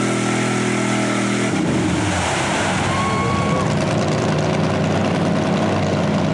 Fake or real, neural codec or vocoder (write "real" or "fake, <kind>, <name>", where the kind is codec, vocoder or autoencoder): real